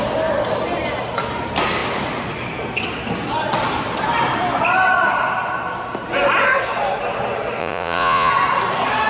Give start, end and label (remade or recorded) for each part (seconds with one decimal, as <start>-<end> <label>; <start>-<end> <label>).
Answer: 0.0-7.6 recorded; 7.6-8.3 remade; 8.3-9.1 recorded